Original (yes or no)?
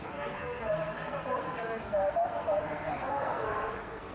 no